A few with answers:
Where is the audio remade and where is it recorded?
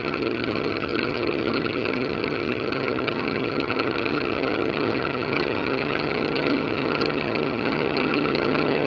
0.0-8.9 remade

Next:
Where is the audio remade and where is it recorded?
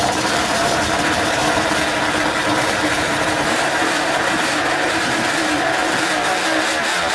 0.0-1.4 remade; 1.4-2.5 recorded; 2.5-5.8 remade; 5.8-7.1 recorded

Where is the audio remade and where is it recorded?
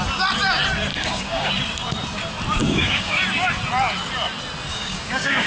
0.0-0.9 recorded; 0.9-1.5 remade; 1.5-2.6 recorded; 2.6-3.2 remade; 3.2-4.7 recorded; 4.7-5.5 remade